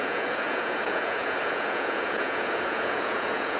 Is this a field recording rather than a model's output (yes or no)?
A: no